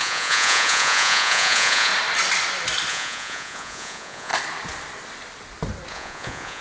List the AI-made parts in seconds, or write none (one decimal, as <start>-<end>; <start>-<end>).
0.0-1.9; 2.9-4.3; 5.9-6.6